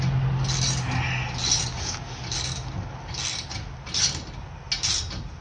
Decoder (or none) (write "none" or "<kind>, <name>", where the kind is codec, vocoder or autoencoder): none